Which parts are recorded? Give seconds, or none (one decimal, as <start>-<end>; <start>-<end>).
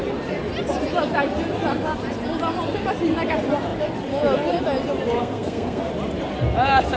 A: 0.0-5.2; 5.9-7.0